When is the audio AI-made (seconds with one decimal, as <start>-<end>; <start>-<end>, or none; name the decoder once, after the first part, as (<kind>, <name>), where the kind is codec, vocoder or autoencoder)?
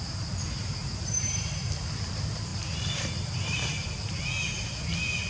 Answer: none